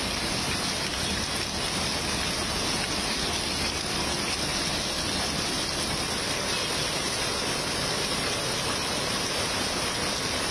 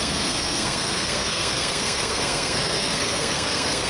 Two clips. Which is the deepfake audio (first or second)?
second